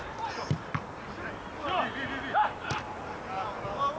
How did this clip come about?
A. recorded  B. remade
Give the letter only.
A